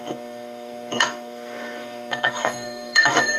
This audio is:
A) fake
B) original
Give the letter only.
A